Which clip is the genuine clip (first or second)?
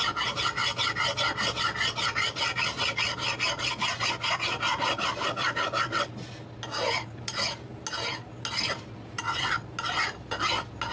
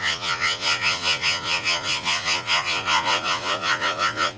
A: first